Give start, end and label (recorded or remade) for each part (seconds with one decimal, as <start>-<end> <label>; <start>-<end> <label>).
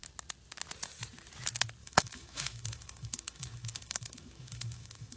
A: 0.0-1.8 recorded; 1.8-5.2 remade